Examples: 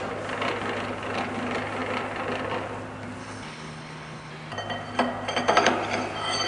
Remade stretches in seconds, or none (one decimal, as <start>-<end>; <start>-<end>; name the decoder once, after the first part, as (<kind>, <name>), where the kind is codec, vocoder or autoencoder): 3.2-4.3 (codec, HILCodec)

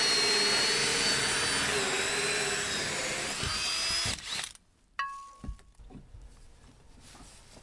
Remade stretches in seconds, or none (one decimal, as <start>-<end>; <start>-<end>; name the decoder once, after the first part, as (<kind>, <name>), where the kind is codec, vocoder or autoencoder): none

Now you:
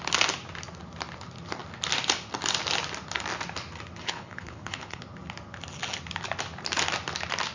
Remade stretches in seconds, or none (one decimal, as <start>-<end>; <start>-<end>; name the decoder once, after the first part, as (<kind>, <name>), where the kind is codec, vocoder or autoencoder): 4.0-5.0 (codec, HILCodec)

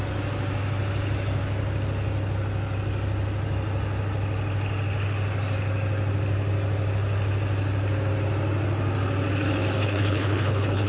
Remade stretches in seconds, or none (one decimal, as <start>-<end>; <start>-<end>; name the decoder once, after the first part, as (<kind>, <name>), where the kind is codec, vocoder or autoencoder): 9.8-10.9 (codec, HILCodec)